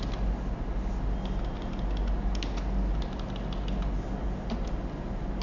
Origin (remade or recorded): recorded